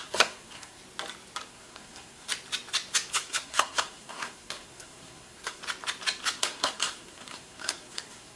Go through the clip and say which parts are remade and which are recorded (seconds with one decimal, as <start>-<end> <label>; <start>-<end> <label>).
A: 0.0-0.8 remade; 0.8-1.5 recorded; 1.5-2.3 remade; 2.3-3.1 recorded; 3.1-5.6 remade; 5.6-6.4 recorded; 6.4-8.4 remade